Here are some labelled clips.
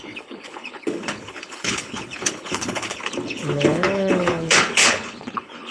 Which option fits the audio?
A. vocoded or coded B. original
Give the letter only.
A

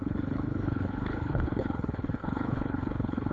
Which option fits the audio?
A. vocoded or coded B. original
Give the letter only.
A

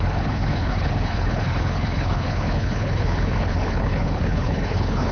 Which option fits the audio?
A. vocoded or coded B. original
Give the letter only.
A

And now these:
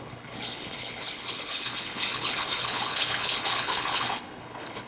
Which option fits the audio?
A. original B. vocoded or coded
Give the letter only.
B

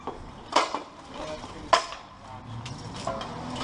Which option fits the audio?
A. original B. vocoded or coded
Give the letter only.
A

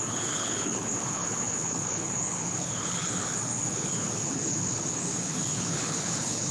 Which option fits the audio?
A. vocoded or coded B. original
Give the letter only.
A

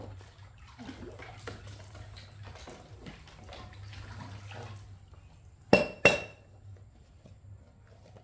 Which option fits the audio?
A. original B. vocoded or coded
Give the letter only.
A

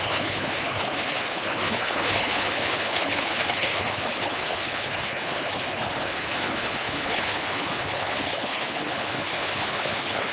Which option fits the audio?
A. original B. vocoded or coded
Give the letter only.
B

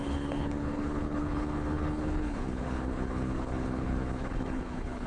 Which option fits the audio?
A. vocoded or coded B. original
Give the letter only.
A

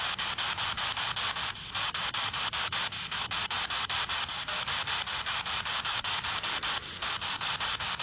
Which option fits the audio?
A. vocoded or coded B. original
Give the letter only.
B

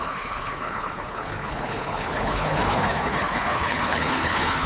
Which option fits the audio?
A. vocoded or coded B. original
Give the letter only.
A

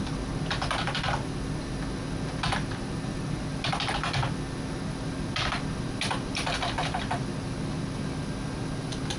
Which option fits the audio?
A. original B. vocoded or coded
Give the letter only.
A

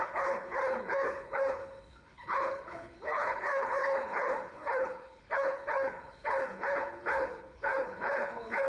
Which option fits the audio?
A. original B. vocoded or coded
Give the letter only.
B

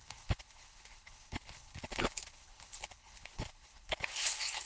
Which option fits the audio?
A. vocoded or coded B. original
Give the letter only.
A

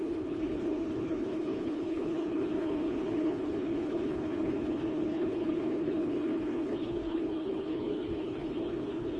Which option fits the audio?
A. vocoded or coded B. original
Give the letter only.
A